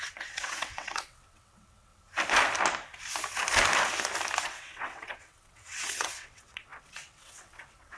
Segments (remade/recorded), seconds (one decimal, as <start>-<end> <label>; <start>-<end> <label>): 0.0-1.9 remade; 1.9-4.4 recorded; 4.4-8.0 remade